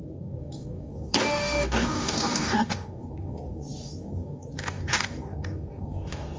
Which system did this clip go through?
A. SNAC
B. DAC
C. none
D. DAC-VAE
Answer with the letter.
B